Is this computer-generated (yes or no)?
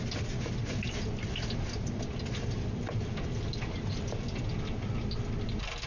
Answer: no